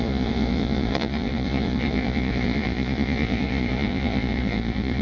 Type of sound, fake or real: fake